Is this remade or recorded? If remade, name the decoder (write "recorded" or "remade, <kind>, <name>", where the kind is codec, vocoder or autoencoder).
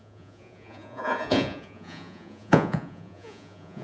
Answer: remade, vocoder, Vocos